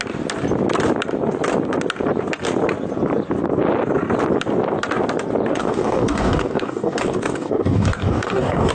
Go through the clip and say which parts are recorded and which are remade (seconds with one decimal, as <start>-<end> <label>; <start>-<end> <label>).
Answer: 0.0-5.5 recorded; 5.5-8.7 remade